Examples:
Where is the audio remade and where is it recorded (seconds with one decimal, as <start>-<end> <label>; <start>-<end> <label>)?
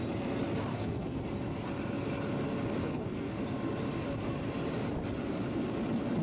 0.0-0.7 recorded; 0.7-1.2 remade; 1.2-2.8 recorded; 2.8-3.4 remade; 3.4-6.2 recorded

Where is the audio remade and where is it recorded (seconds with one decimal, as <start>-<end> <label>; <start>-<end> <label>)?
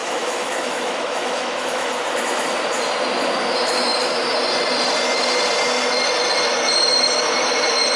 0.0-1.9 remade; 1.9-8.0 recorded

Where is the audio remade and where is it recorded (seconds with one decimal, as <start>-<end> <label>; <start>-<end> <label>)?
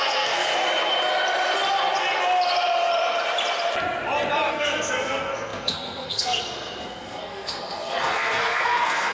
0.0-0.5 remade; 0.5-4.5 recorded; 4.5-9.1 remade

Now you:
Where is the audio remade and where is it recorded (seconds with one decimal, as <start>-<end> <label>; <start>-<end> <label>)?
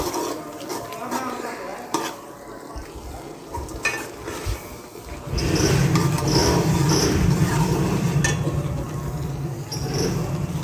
0.0-6.4 recorded; 6.4-8.2 remade; 8.2-10.6 recorded